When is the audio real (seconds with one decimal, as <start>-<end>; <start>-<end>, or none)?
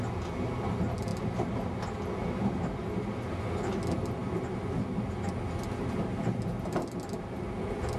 0.0-8.0